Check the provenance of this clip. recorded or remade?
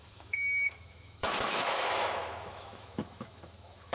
remade